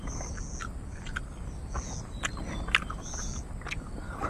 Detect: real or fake real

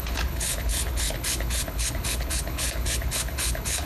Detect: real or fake fake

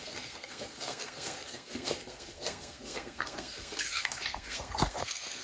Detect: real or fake fake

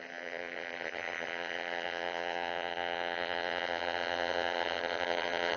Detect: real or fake fake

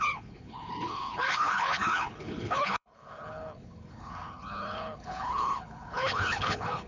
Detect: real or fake fake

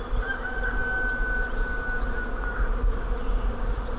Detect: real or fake real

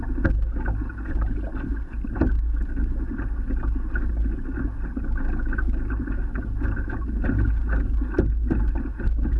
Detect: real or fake real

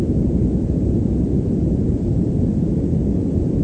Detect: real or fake real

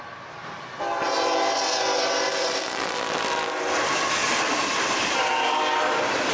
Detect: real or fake real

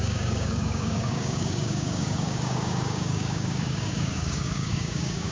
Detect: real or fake fake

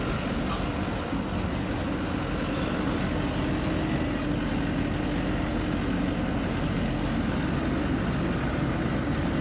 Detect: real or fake real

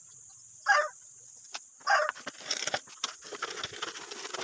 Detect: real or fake real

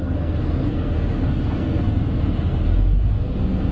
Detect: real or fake fake